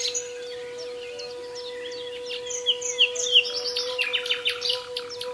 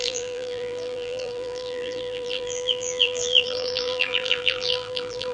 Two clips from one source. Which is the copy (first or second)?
second